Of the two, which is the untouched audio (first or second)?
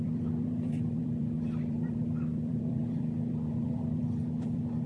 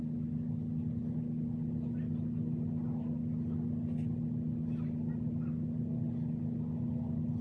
second